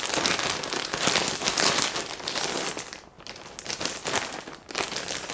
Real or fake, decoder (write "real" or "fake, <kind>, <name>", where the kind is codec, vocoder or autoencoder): real